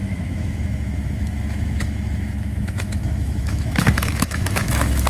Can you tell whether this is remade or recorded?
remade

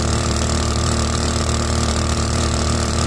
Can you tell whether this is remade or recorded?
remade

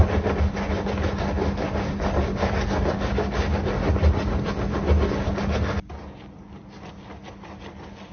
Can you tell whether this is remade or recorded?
recorded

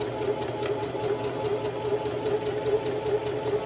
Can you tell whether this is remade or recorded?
recorded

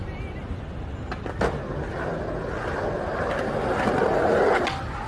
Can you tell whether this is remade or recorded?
recorded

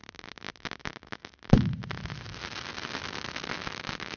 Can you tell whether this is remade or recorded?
recorded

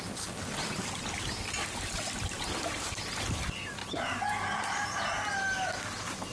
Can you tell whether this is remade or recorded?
recorded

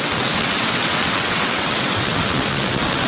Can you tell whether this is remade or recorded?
remade